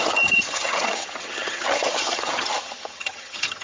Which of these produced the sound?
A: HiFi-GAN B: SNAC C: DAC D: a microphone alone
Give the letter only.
A